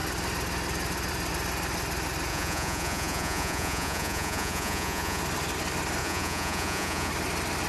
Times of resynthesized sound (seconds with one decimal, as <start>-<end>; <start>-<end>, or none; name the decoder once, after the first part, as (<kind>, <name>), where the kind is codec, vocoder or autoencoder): 2.3-5.2 (vocoder, Vocos); 6.0-7.1